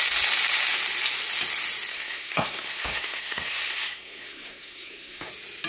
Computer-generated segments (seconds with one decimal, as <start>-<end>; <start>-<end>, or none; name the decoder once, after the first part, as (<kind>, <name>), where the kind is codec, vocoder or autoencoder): 1.9-5.3 (codec, SNAC)

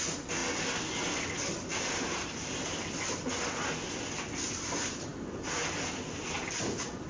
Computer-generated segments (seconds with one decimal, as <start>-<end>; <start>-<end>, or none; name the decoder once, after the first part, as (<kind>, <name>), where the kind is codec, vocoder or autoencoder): none